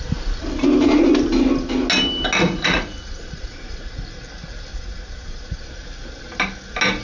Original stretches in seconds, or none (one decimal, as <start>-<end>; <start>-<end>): 0.0-2.4; 4.0-4.7; 5.7-7.0